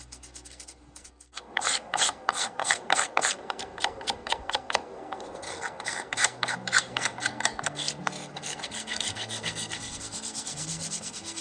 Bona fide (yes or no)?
no